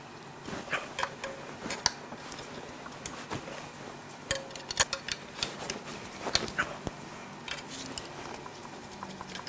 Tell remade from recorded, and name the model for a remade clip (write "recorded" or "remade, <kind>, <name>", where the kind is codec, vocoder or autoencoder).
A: recorded